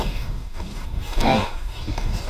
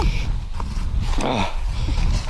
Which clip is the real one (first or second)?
second